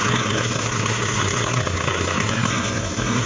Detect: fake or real fake